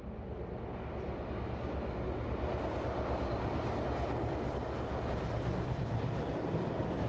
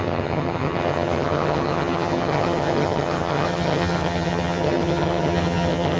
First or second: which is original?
first